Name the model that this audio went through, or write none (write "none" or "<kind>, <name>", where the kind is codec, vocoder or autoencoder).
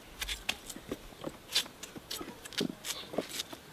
none